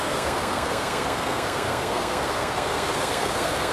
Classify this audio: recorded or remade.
remade